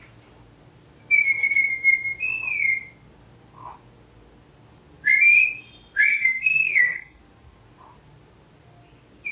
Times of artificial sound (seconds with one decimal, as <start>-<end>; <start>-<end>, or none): 6.1-7.2